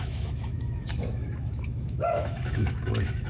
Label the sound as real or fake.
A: fake